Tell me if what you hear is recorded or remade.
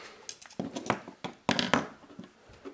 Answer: recorded